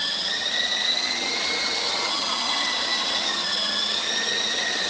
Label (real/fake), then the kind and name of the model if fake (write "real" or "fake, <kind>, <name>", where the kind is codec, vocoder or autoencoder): fake, vocoder, HiFi-GAN